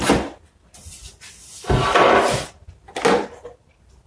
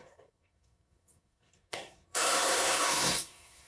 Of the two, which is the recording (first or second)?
first